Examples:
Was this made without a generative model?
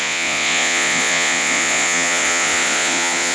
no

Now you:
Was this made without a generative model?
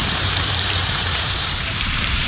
no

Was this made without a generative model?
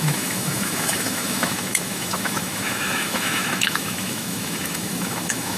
no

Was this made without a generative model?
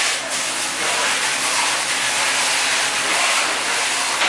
yes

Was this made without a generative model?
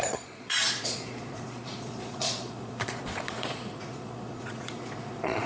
no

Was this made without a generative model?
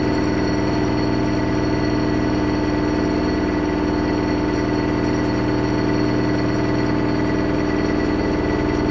yes